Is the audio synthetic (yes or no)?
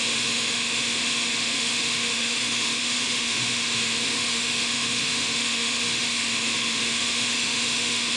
yes